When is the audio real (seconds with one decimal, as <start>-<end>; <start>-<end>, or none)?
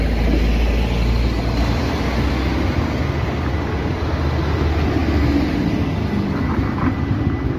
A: 0.0-7.6